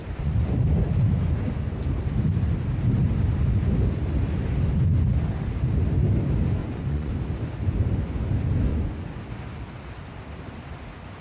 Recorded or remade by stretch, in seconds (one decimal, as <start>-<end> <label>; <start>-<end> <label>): 0.0-0.5 remade; 0.5-6.6 recorded; 6.6-7.1 remade; 7.1-8.7 recorded; 8.7-9.2 remade; 9.2-11.2 recorded